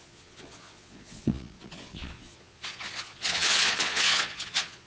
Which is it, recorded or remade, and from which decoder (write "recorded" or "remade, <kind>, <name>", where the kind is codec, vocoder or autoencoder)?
remade, vocoder, Vocos